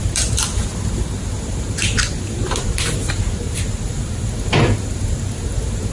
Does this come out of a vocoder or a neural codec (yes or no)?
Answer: yes